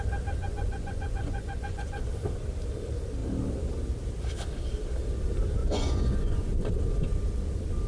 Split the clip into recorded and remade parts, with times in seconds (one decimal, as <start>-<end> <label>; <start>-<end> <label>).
0.0-0.4 recorded; 0.4-2.0 remade; 2.0-5.6 recorded; 5.6-6.7 remade; 6.7-7.9 recorded